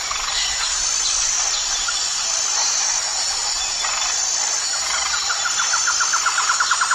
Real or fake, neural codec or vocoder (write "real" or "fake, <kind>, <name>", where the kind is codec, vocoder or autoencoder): real